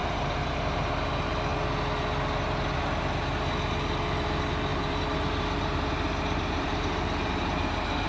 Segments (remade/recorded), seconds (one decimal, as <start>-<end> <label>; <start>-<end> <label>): 0.0-1.1 remade; 1.1-4.7 recorded; 4.7-8.1 remade

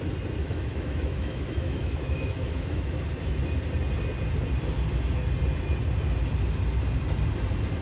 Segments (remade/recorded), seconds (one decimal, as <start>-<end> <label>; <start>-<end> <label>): 0.0-0.4 recorded; 0.4-2.9 remade; 2.9-7.8 recorded